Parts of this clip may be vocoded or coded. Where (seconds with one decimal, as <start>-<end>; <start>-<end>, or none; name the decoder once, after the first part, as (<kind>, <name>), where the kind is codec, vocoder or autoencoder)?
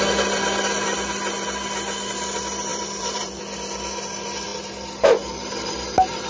2.7-3.4 (vocoder, BigVGAN v2)